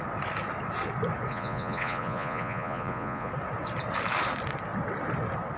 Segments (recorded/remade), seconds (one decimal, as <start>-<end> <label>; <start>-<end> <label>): 0.0-1.3 recorded; 1.3-3.3 remade; 3.3-5.6 recorded